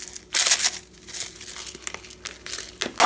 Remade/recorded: recorded